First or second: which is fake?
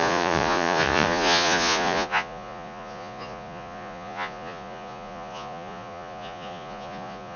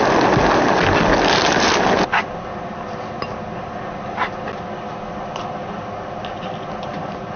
first